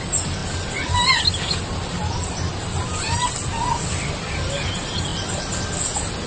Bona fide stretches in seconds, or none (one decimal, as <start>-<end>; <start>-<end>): 0.0-6.3

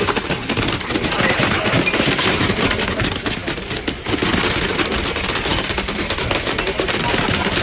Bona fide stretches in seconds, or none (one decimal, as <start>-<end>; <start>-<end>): 0.0-7.6

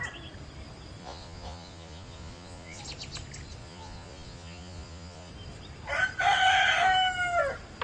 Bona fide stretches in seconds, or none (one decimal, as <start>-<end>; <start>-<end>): 0.0-1.0; 2.8-3.6; 5.3-7.8

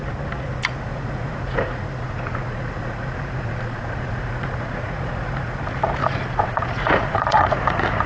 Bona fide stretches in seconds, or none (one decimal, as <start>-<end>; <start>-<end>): 0.0-0.9; 5.6-6.0